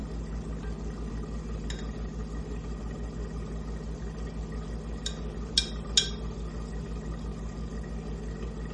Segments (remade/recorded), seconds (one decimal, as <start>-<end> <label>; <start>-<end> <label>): 0.0-8.7 recorded